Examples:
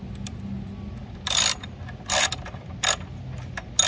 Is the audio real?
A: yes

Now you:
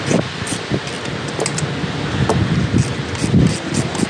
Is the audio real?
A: yes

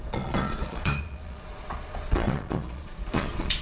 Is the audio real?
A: no